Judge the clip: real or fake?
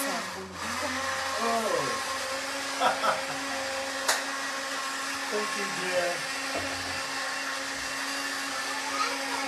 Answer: real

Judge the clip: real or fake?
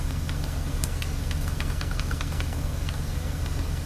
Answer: fake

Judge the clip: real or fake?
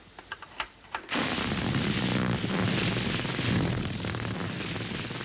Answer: real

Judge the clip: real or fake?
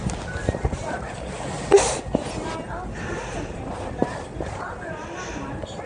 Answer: real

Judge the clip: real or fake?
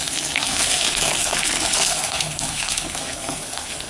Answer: fake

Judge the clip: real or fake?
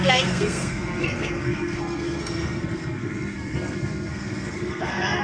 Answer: fake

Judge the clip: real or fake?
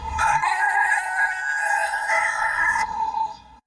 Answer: fake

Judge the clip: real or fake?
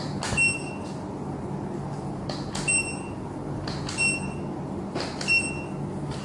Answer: real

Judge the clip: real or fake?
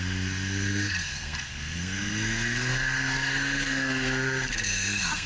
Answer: fake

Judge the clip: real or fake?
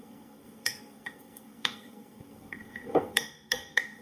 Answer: fake